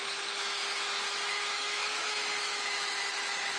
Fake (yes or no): yes